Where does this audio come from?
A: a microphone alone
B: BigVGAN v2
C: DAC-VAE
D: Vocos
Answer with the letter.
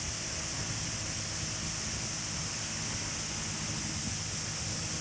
A